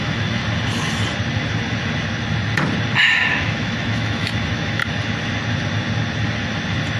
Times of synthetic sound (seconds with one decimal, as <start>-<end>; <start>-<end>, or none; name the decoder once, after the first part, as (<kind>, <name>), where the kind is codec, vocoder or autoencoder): 0.0-0.4 (autoencoder, DAC-VAE); 3.3-4.8